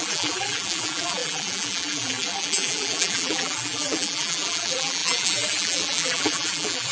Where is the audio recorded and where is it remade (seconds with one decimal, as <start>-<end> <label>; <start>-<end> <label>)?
0.0-6.9 remade